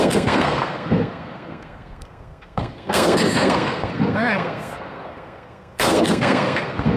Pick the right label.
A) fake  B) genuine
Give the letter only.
A